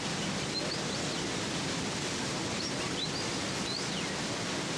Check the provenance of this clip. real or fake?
real